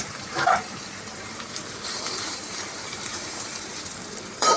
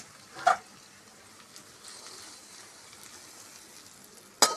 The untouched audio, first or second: second